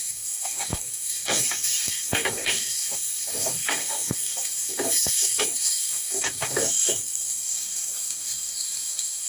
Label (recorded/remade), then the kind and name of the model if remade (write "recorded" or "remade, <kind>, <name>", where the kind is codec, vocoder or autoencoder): remade, codec, DAC